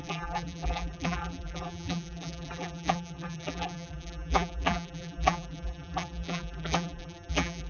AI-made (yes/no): yes